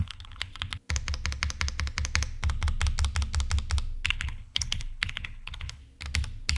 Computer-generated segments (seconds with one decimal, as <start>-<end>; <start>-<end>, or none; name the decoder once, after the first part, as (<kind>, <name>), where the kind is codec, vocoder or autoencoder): 0.0-0.5 (codec, HILCodec); 4.1-5.8

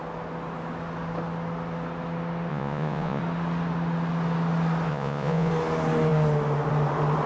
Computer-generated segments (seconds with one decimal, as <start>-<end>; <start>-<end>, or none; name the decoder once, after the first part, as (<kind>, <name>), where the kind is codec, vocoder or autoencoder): 2.5-3.2 (vocoder, Vocos); 4.9-5.5